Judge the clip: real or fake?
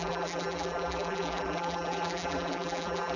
fake